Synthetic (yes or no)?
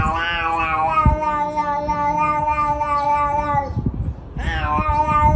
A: no